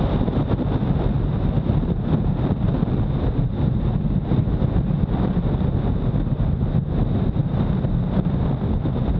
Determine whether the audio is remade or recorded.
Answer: recorded